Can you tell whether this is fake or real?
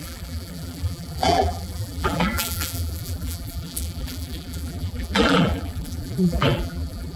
fake